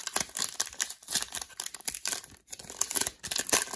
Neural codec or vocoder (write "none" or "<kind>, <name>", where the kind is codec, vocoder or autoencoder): none